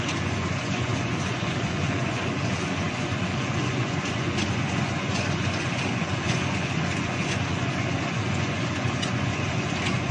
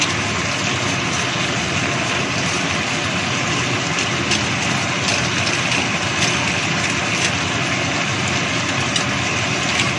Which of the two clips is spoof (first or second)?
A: first